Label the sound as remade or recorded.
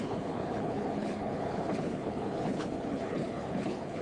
remade